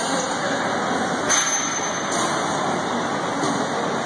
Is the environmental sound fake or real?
real